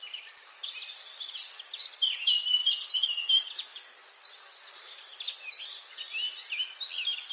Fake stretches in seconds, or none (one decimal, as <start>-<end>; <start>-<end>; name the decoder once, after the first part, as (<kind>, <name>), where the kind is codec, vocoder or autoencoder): none